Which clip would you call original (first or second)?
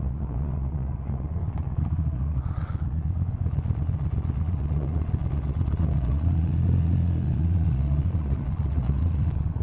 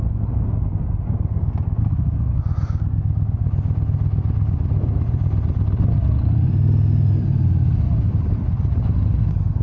second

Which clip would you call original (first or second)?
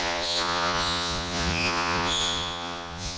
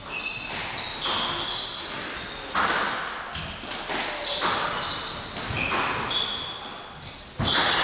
second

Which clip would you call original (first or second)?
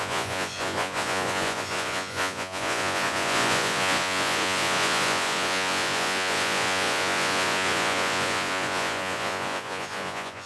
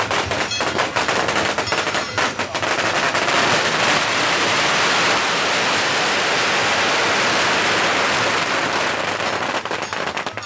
second